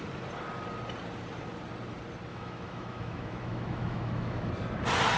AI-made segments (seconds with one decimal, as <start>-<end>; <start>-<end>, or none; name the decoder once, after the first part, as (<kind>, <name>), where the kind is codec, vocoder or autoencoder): 2.3-4.5 (autoencoder, DAC-VAE)